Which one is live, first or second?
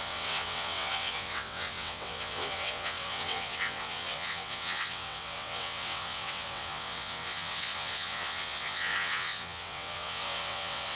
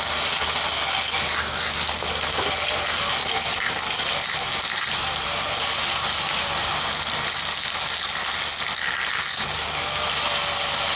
second